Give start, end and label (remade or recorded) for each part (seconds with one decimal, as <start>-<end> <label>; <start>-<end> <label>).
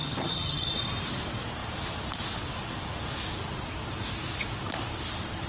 0.0-0.7 remade; 0.7-5.5 recorded